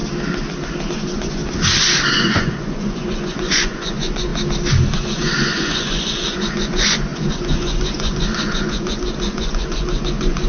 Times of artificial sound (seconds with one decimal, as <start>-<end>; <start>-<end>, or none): 0.9-1.4; 2.1-4.3; 5.0-10.5